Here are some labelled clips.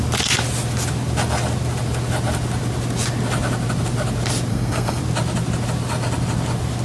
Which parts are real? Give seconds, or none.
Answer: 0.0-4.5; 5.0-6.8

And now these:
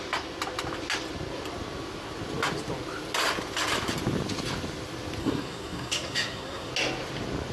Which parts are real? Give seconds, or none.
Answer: 0.0-5.2; 6.7-7.5

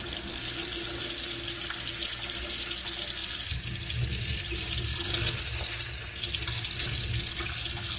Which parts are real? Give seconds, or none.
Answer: 0.0-8.0

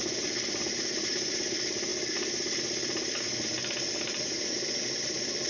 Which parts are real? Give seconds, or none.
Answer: 0.0-5.5